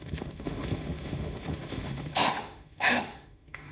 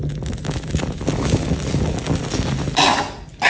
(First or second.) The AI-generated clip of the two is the first